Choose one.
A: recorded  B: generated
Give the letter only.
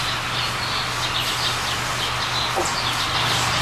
A